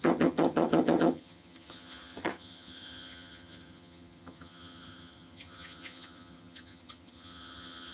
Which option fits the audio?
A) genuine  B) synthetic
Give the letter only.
B